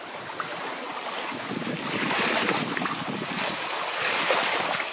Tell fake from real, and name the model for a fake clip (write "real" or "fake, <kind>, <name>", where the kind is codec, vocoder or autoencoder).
real